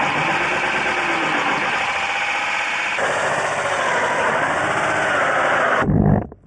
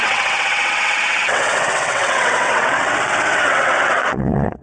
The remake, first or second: second